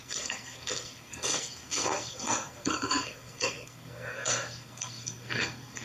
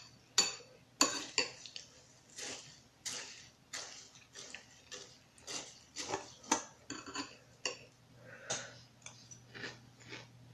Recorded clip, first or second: second